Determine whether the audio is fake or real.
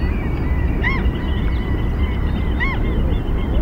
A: real